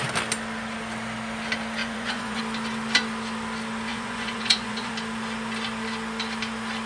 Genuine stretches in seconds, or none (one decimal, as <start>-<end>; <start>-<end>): 0.0-1.8; 2.4-3.9; 4.9-6.9